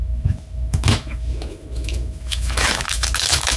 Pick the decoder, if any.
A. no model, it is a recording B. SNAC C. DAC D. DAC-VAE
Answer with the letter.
D